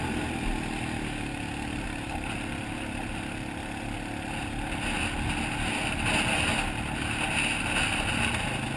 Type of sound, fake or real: real